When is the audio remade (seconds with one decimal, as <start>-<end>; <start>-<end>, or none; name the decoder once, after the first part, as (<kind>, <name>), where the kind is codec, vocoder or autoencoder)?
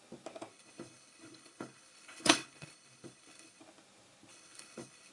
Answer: 0.5-3.6 (codec, HILCodec); 4.3-5.1